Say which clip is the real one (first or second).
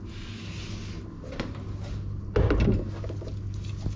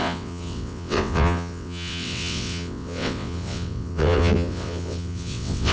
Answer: first